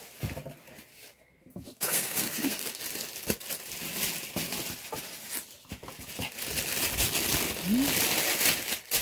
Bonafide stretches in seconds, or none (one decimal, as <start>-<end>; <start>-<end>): 0.0-0.9; 2.8-9.0